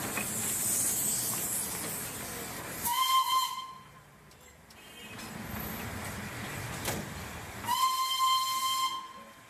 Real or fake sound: real